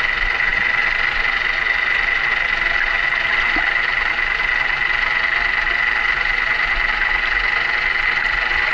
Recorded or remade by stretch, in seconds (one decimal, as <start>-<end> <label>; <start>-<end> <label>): 0.0-8.7 recorded